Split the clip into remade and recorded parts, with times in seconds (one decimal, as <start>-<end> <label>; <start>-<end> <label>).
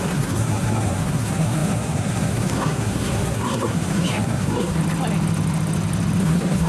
0.0-4.8 remade; 4.8-6.2 recorded; 6.2-6.7 remade